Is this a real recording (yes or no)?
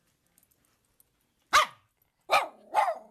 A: yes